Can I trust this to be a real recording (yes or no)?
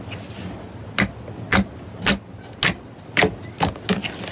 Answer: yes